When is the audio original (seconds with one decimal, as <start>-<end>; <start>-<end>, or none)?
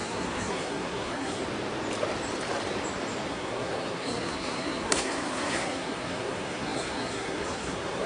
1.4-3.3